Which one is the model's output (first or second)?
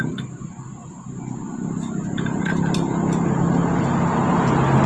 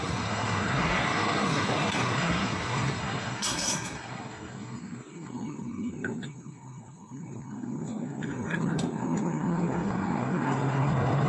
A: second